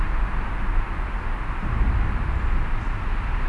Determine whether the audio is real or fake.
real